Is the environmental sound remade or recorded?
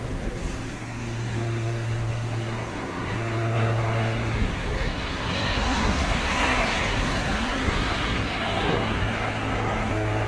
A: remade